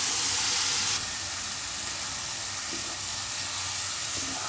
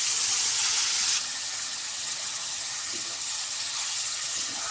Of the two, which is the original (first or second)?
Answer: first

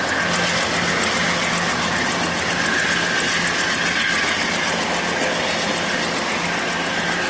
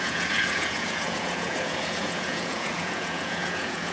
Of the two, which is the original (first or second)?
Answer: first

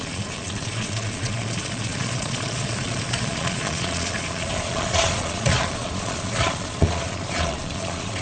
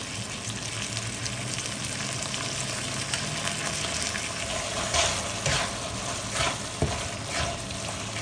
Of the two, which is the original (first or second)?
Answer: second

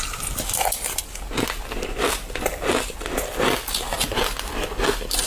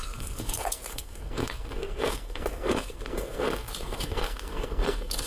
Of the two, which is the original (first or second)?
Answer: first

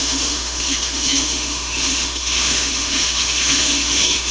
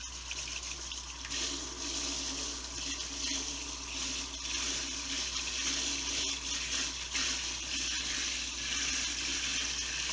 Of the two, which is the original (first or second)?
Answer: second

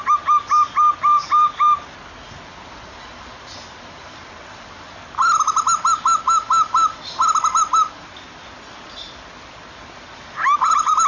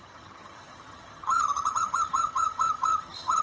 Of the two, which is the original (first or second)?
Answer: first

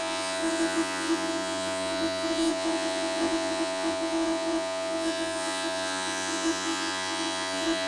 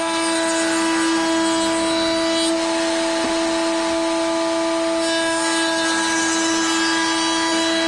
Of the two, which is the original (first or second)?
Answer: second